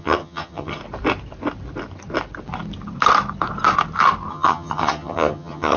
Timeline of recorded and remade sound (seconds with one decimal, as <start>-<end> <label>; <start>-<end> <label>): 0.0-0.8 remade; 0.8-4.3 recorded; 4.3-5.8 remade